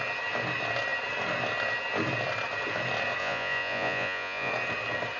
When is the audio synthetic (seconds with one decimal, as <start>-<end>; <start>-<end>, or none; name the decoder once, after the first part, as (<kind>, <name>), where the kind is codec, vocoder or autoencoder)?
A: 3.2-4.5 (vocoder, Vocos)